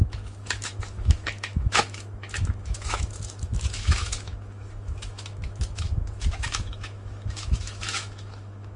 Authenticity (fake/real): fake